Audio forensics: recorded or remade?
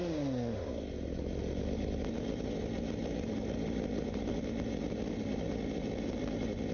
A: recorded